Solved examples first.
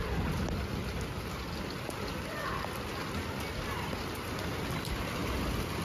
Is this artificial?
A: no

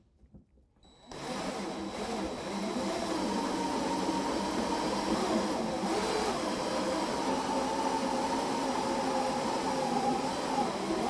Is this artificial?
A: no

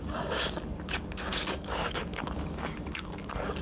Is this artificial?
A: yes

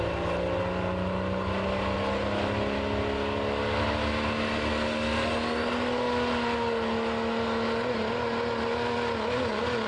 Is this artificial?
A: no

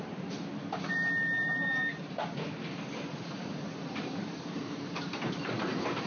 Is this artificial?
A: yes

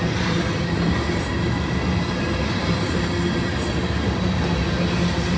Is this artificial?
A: no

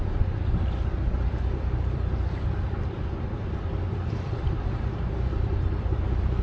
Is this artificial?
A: yes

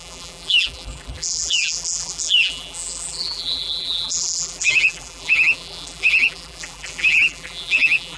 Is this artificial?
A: yes